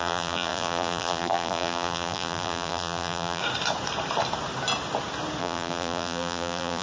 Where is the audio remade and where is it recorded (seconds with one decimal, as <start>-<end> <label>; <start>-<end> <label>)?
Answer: 0.0-3.4 remade; 3.4-5.4 recorded; 5.4-6.8 remade